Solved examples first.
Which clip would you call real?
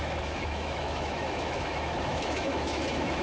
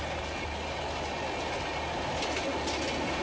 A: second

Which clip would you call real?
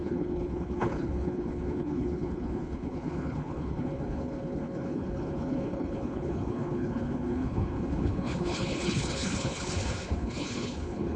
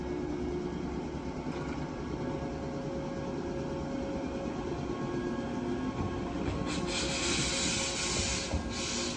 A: second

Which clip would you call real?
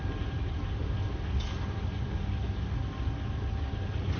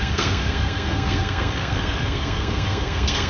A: first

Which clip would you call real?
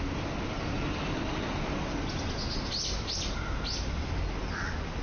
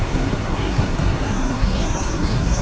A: first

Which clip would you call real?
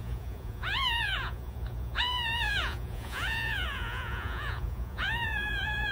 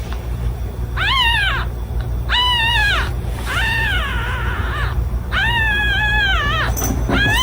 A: second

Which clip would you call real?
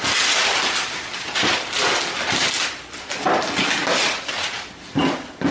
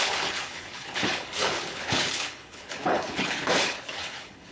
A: first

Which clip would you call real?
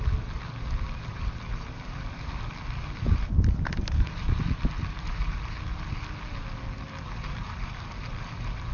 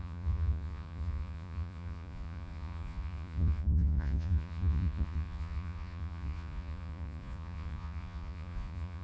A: first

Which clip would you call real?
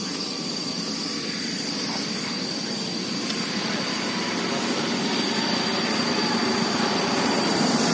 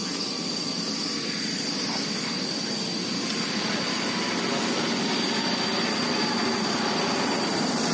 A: second